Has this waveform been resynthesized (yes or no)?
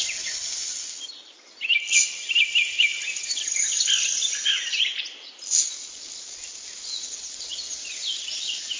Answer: no